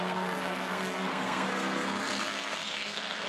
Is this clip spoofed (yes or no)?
yes